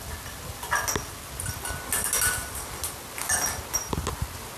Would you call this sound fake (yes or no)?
no